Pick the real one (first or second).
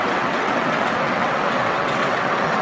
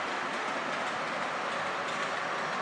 second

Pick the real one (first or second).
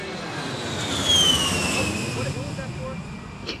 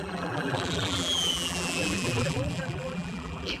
first